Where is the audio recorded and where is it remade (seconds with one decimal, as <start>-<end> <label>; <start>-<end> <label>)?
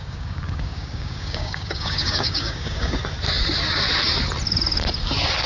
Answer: 0.0-3.0 remade; 3.0-5.5 recorded